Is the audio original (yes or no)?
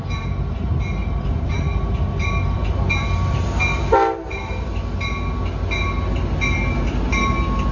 yes